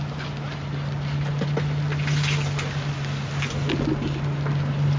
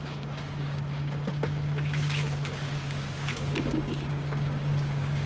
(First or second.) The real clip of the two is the first